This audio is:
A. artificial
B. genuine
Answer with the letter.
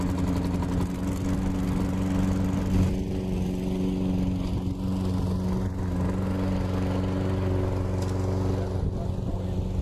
B